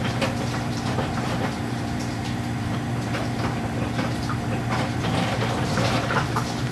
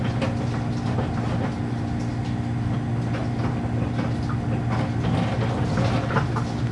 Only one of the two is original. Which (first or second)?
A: second